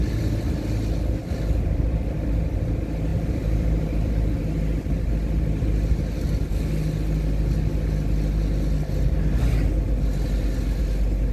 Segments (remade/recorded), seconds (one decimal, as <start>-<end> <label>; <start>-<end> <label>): 0.0-1.2 recorded; 1.2-2.7 remade; 2.7-3.1 recorded; 3.1-4.1 remade; 4.1-11.3 recorded